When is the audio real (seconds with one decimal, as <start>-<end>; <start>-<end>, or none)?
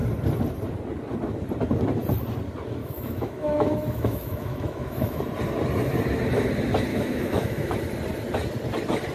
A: 0.0-2.8; 5.2-6.9; 7.7-9.1